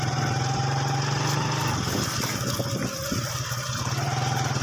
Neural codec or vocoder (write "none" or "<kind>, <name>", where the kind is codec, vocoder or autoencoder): none